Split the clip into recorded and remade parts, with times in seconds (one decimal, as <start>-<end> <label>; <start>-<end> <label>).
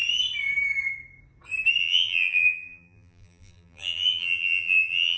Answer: 0.0-1.8 recorded; 1.8-5.2 remade